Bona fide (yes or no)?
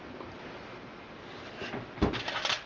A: yes